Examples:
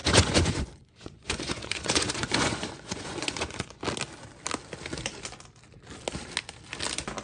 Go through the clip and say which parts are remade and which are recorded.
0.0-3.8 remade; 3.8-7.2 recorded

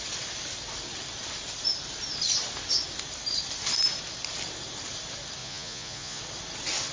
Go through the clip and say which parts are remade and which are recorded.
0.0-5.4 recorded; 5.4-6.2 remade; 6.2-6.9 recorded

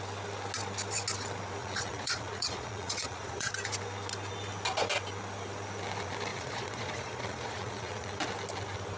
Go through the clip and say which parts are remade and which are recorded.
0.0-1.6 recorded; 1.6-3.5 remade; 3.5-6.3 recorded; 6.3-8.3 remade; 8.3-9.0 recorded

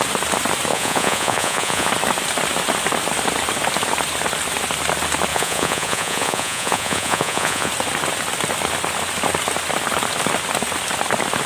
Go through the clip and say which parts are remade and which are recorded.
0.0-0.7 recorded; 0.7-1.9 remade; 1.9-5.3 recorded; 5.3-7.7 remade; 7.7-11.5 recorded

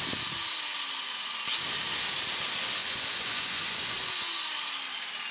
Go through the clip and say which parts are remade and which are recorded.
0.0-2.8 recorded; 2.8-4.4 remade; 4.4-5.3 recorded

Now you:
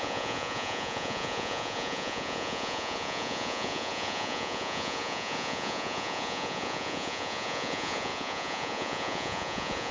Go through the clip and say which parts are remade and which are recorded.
0.0-9.9 remade